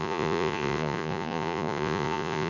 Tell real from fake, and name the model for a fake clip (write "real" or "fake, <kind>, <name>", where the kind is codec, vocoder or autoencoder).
fake, vocoder, Vocos